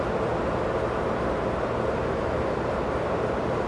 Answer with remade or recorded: recorded